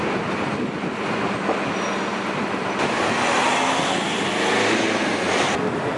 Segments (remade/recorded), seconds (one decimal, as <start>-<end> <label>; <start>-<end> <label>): 0.0-6.0 recorded